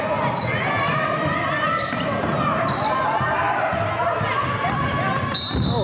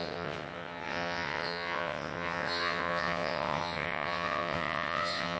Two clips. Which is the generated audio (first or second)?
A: second